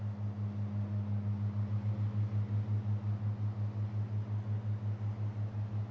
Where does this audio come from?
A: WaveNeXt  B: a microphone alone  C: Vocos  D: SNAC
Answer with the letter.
B